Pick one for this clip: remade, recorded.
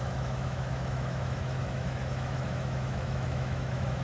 remade